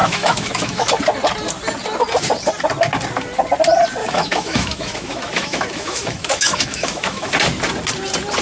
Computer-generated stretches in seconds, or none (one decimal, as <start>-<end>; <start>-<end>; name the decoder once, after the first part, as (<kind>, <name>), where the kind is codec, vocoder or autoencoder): 0.0-0.9 (autoencoder, DAC-VAE); 4.0-7.3